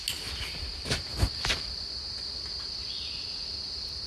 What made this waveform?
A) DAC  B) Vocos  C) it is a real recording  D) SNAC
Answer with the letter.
C